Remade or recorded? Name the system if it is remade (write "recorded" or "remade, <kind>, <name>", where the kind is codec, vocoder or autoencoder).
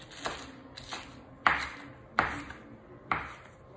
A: recorded